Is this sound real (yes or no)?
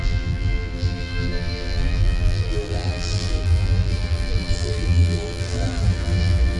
no